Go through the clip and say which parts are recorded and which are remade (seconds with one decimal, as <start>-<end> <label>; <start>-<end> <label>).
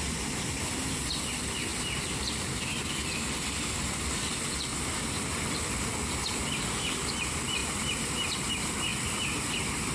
0.0-9.9 recorded